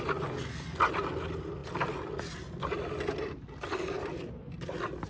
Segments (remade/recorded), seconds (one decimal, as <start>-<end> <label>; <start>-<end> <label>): 0.0-5.1 recorded